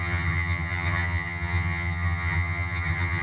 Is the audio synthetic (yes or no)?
yes